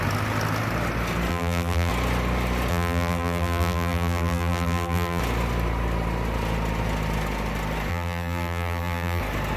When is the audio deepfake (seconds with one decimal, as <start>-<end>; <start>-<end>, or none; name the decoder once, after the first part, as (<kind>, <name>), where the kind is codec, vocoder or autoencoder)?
1.3-1.9 (vocoder, BigVGAN v2); 2.7-5.2; 7.9-9.2